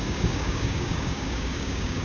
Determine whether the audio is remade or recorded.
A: remade